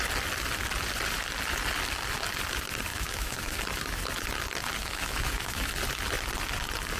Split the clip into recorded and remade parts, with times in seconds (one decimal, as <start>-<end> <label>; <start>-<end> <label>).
0.0-2.9 recorded; 2.9-3.6 remade; 3.6-4.8 recorded; 4.8-5.7 remade; 5.7-7.0 recorded